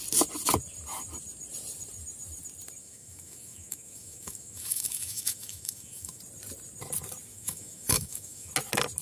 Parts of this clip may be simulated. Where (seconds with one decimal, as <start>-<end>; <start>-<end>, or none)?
2.8-6.2; 7.3-8.5